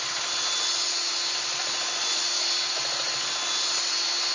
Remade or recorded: recorded